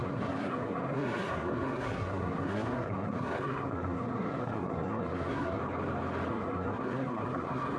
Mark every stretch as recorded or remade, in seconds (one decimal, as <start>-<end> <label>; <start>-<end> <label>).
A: 0.0-5.6 remade; 5.6-6.3 recorded; 6.3-7.8 remade